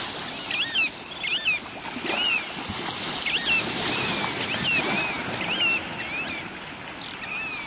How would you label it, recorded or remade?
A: recorded